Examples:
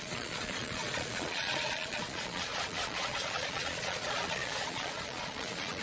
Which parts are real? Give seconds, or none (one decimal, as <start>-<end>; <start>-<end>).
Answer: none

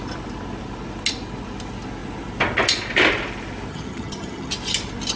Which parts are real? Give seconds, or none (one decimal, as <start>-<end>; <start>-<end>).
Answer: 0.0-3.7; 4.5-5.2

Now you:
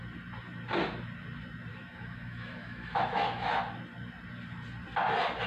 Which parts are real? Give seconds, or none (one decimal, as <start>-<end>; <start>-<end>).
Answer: 0.0-1.7; 3.6-5.5

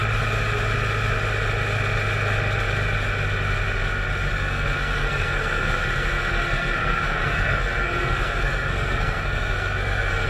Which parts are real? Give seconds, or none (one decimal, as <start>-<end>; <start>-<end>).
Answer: 0.0-4.3

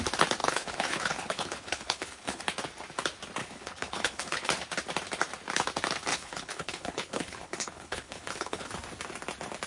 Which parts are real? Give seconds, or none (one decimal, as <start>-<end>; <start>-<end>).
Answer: 0.0-0.4; 2.4-3.4; 4.5-6.1; 8.7-9.7

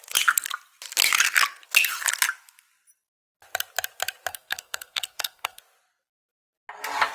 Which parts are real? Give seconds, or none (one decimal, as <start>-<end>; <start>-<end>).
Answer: 0.0-4.3; 5.6-7.1